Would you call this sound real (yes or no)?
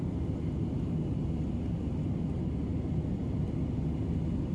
yes